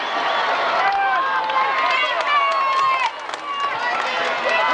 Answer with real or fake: real